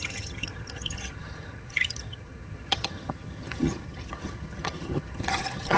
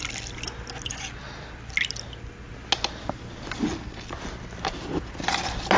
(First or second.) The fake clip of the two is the first